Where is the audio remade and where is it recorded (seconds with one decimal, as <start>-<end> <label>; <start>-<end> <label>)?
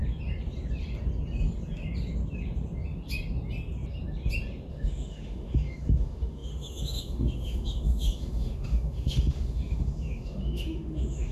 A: 0.0-4.7 recorded; 4.7-11.3 remade